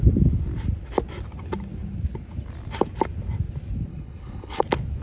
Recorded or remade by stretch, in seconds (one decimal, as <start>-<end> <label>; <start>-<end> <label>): 0.0-3.9 recorded; 3.9-4.6 remade; 4.6-5.0 recorded